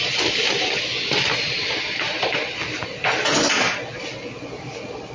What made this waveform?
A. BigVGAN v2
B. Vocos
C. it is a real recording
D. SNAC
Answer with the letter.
C